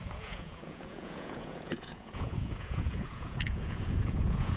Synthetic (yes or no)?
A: yes